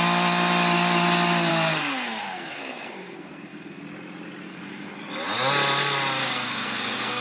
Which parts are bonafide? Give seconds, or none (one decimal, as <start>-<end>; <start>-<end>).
0.0-1.5; 3.8-4.4; 4.9-6.2